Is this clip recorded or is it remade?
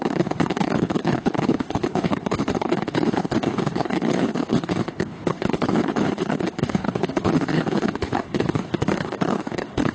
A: remade